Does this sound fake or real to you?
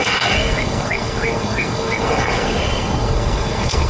fake